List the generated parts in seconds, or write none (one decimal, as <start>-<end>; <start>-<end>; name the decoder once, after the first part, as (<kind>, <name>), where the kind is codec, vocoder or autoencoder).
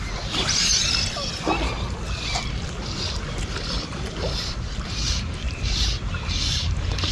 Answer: none